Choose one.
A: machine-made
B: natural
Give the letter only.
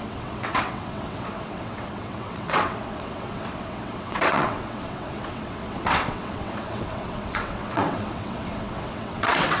A